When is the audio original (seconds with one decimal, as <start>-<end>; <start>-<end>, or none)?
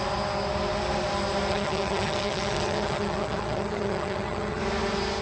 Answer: 0.0-1.5; 4.6-5.2